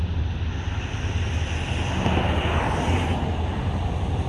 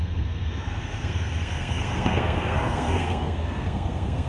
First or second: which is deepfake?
second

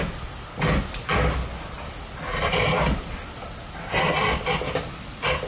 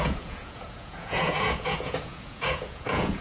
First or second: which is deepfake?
second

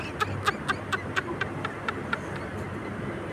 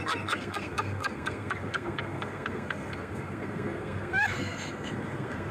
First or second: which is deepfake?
second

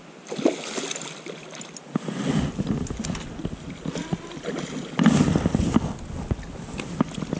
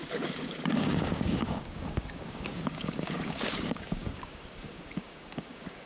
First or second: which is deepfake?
second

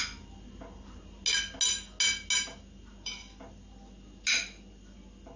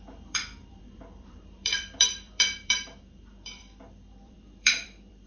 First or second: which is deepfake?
second